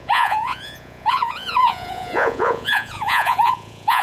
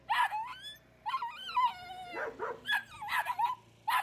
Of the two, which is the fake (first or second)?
first